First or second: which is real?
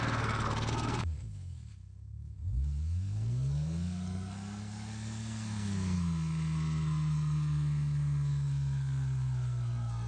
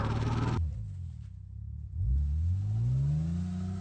second